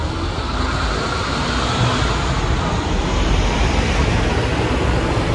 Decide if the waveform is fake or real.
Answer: real